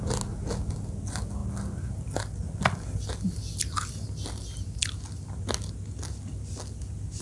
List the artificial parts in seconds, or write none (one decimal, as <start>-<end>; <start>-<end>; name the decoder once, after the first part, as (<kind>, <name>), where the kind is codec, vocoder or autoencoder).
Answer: none